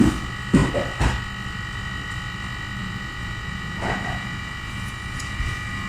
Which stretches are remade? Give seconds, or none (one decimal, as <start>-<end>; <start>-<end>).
2.8-5.9